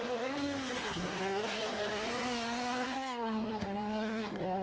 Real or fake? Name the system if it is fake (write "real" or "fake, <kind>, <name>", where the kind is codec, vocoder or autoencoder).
fake, codec, SNAC